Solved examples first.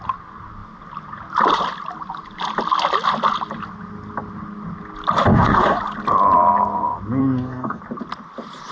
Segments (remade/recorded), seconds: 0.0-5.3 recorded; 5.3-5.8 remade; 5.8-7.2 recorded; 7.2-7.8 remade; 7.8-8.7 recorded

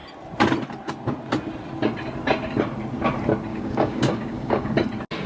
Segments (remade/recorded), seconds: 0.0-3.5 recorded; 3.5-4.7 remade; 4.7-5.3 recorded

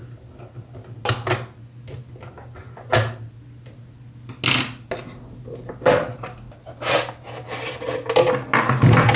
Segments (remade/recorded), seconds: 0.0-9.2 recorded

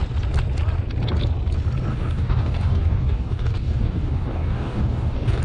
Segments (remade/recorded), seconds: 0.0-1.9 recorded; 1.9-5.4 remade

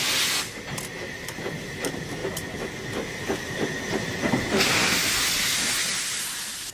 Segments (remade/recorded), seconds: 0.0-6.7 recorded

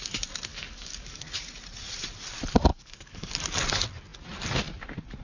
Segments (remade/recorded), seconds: 0.0-0.5 recorded; 0.5-1.3 remade; 1.3-2.7 recorded; 2.7-3.3 remade; 3.3-5.2 recorded

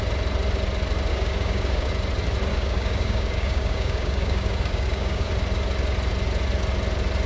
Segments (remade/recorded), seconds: 0.0-1.1 recorded; 1.1-1.9 remade; 1.9-2.5 recorded; 2.5-5.3 remade; 5.3-7.3 recorded